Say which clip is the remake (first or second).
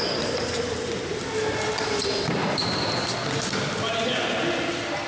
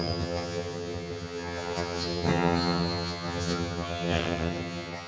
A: second